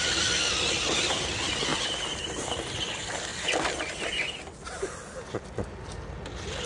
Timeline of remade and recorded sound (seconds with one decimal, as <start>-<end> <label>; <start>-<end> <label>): 0.0-1.7 recorded; 1.7-2.2 remade; 2.2-3.3 recorded; 3.3-6.0 remade; 6.0-6.7 recorded